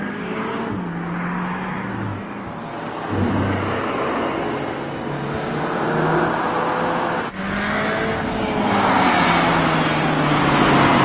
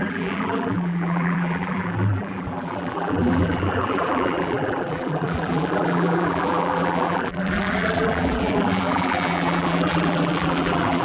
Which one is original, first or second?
first